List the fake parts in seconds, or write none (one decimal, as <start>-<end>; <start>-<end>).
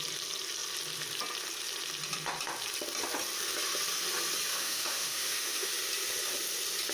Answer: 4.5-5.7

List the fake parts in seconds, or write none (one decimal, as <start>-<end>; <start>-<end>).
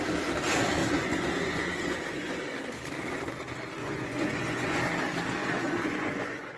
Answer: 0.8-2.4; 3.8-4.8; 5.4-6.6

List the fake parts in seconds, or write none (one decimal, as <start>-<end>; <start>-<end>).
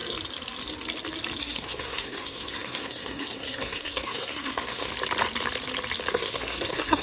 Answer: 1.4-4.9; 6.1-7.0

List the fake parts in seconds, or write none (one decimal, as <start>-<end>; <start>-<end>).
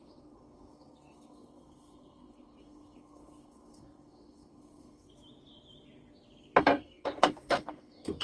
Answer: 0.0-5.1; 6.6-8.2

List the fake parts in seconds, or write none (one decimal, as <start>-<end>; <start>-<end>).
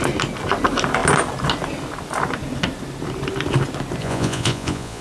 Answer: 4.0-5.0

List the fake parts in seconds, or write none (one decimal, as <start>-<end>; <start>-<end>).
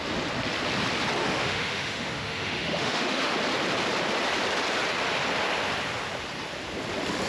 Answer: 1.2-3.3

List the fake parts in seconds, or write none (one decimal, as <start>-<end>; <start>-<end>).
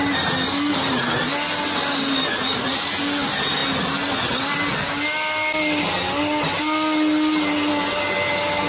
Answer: none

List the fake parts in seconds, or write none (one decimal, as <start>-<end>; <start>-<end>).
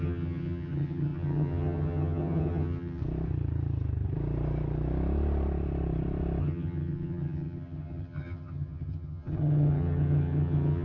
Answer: 0.0-3.0; 6.4-10.8